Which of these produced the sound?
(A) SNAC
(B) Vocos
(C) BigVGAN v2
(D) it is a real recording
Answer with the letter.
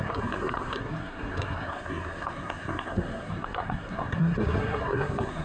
A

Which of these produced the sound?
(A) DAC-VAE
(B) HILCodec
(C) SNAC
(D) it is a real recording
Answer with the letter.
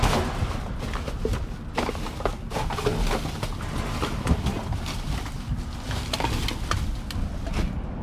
D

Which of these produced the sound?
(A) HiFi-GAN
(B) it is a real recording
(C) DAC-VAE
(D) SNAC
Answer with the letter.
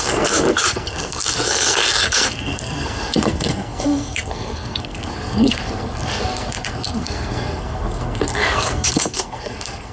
D